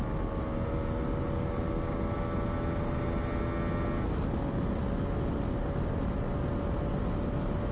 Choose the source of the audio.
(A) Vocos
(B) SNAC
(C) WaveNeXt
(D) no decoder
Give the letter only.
D